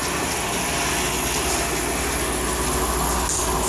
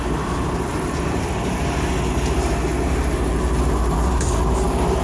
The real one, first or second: first